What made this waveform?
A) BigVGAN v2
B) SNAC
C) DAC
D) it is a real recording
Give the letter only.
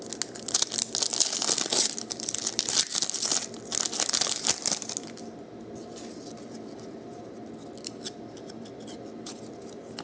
D